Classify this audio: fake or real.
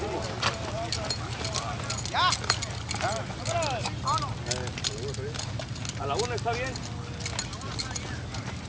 real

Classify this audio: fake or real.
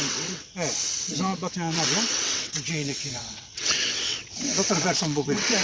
fake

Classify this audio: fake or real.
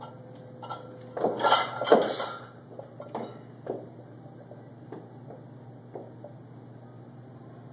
real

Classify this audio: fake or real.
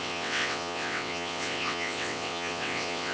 fake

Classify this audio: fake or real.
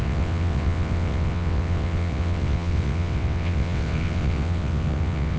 fake